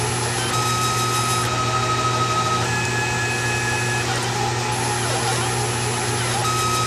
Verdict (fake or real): real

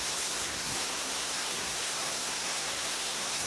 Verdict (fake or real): fake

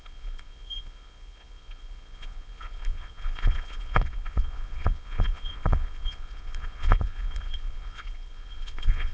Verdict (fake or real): fake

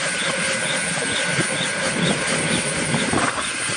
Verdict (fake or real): real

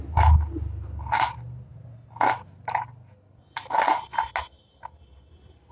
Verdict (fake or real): real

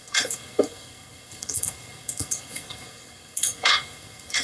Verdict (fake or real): fake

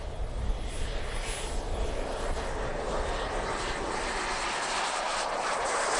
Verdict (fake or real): real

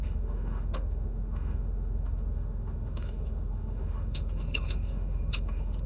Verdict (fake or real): fake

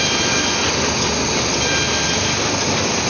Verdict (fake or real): real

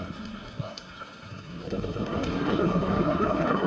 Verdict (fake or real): fake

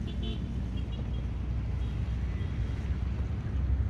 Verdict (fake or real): real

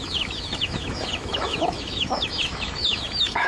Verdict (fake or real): fake